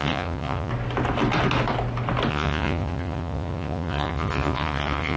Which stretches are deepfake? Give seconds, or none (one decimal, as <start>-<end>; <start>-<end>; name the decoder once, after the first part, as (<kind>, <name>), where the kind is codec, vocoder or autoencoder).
0.0-0.7 (vocoder, Vocos); 2.3-5.2